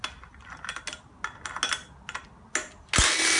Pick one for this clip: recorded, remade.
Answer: recorded